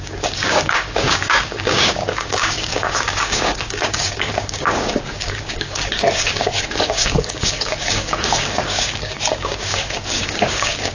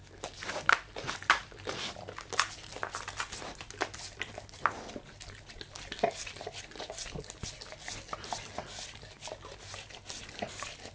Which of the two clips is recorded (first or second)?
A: second